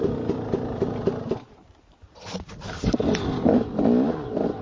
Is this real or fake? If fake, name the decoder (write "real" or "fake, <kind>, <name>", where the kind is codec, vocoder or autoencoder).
real